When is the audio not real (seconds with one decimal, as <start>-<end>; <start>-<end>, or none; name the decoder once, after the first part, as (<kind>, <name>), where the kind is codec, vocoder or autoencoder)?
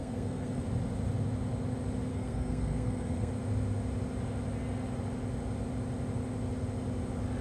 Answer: 0.0-0.6 (codec, SNAC); 2.1-3.3